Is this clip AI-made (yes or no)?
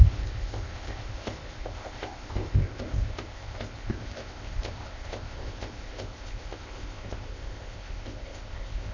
yes